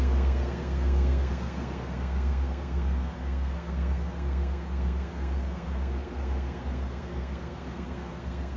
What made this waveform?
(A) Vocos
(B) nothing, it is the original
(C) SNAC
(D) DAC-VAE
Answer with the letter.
C